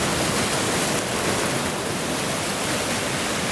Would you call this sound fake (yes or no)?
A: no